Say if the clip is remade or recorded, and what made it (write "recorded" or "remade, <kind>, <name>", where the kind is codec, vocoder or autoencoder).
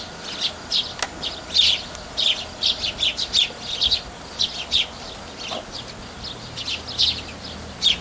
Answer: recorded